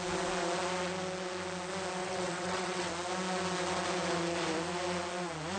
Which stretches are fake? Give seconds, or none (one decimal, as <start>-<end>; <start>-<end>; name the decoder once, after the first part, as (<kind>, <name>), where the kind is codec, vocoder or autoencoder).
2.0-2.9 (vocoder, WaveNeXt)